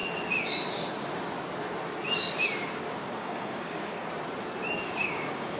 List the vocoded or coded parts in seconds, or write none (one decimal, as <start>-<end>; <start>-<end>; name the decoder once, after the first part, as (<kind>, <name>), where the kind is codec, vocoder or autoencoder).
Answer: 3.0-4.1 (codec, DAC); 5.0-5.6